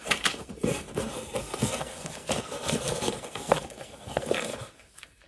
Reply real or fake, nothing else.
fake